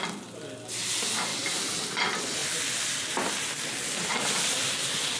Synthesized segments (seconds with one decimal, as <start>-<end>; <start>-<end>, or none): 1.3-1.8